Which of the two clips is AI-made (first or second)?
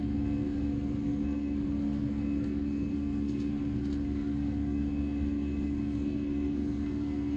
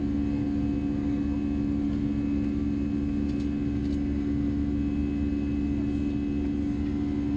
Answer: first